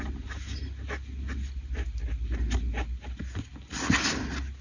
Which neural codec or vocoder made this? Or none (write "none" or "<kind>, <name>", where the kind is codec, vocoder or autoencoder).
none